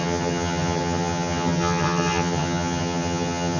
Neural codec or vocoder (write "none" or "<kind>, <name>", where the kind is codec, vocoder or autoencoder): vocoder, HiFi-GAN